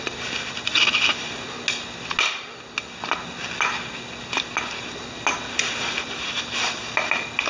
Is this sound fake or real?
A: real